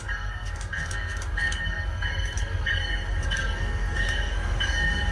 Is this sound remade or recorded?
remade